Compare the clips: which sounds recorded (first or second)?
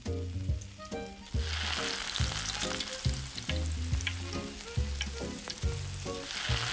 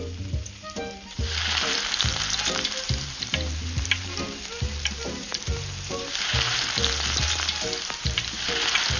first